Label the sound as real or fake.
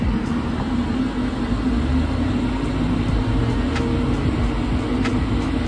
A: real